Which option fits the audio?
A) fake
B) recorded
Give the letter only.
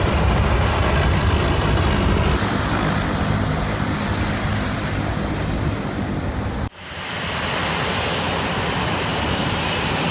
B